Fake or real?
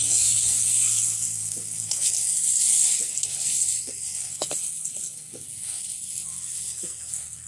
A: fake